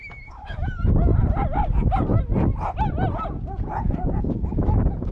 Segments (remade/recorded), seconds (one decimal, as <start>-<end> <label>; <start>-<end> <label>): 0.0-1.1 remade; 1.1-4.2 recorded; 4.2-5.1 remade